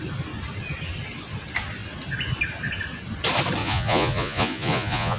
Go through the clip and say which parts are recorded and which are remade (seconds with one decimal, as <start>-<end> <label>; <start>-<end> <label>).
0.0-3.6 recorded; 3.6-5.2 remade